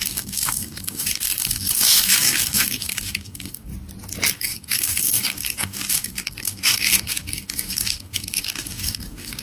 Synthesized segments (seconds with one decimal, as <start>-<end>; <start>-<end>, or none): 0.0-3.7; 4.3-9.4